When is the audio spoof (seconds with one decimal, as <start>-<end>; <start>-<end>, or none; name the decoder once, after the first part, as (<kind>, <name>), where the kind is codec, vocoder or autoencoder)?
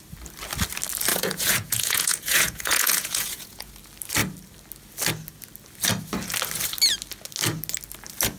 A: 1.1-3.7 (vocoder, Vocos)